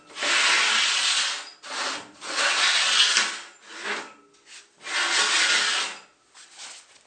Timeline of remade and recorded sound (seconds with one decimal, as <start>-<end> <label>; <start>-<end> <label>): 0.0-7.1 recorded